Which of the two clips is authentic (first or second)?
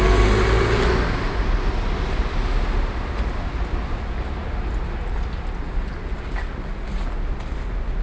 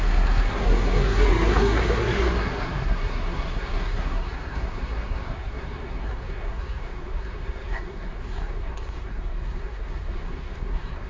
first